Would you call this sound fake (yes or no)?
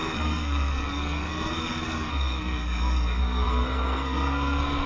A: yes